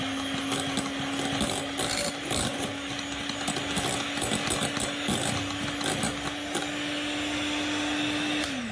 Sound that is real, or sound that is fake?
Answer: real